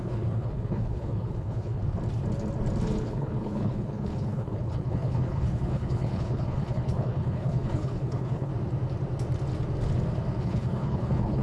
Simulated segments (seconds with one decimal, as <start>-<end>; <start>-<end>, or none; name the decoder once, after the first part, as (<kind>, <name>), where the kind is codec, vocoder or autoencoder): 0.0-1.8 (codec, HILCodec); 3.0-8.5; 10.4-11.4